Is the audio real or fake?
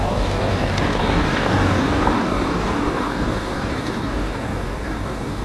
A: fake